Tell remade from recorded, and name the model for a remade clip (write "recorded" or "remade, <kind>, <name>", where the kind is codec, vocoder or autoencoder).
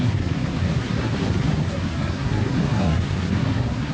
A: remade, codec, SNAC